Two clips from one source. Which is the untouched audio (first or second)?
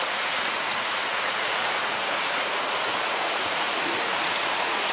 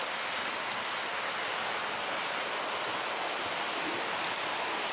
second